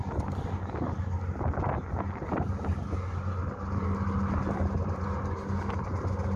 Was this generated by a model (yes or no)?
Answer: no